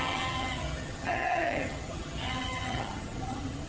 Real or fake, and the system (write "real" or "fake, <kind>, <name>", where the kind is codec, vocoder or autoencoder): fake, vocoder, HiFi-GAN